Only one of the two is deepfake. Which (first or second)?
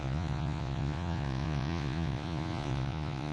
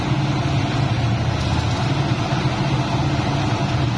first